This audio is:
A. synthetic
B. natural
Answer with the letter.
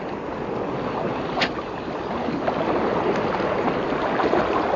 B